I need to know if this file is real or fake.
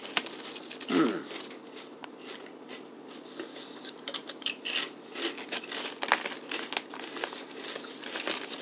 real